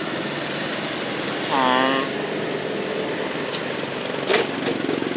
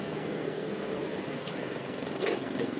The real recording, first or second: first